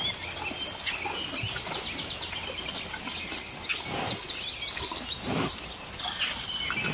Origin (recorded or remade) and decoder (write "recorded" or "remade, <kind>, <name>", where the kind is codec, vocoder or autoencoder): recorded